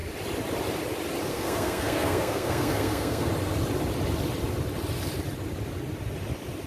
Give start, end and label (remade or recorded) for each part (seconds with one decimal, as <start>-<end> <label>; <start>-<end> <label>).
0.0-1.3 recorded; 1.3-3.3 remade; 3.3-6.7 recorded